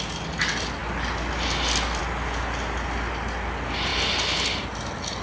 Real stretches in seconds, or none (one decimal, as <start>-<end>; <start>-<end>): 0.0-5.2